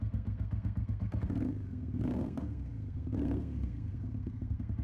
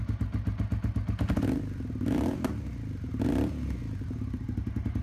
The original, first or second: second